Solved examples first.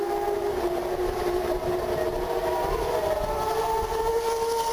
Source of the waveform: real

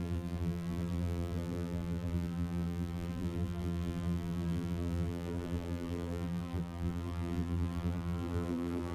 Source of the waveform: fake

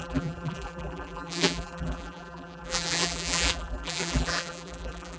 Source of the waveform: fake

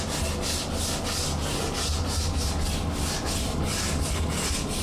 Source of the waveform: real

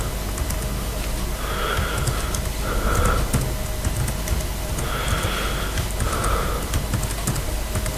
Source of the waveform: real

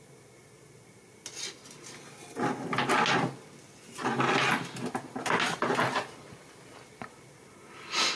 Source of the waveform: real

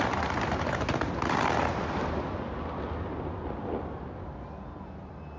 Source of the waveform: real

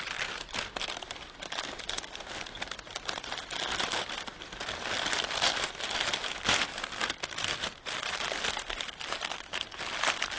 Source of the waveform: real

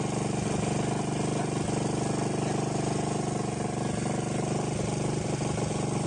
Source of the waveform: real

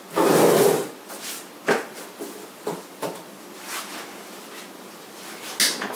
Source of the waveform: real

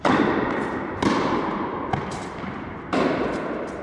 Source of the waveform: real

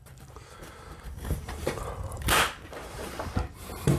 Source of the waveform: fake